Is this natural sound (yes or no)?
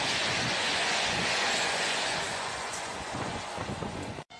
no